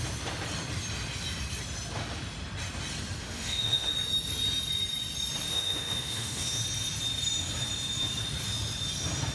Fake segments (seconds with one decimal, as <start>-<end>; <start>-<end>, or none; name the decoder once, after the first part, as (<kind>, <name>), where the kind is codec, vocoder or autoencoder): 3.2-3.9 (autoencoder, DAC-VAE); 5.5-6.6